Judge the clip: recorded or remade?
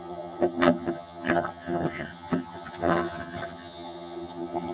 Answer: remade